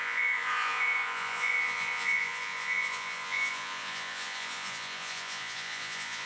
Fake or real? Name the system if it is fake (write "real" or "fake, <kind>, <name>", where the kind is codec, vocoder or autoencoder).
fake, vocoder, Vocos